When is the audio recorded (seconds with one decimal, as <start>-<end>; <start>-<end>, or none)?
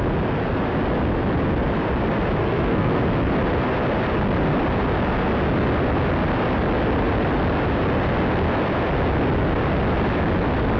0.0-2.4; 3.0-10.8